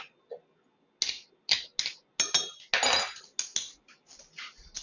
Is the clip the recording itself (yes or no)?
yes